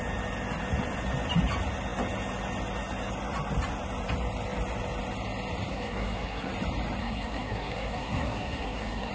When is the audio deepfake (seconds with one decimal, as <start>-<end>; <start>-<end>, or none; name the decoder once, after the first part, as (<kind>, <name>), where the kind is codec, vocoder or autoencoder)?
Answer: 5.7-6.5 (codec, SNAC); 7.0-9.1